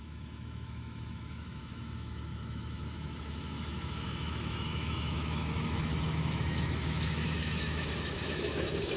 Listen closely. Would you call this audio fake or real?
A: fake